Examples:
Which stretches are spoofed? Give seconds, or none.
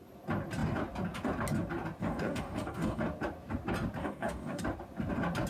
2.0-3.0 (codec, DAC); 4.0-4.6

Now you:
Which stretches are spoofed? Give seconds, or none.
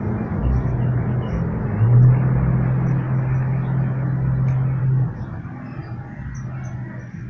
none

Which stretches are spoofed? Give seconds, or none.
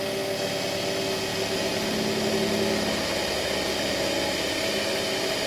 none